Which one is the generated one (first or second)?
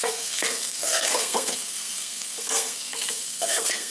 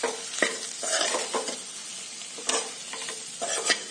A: first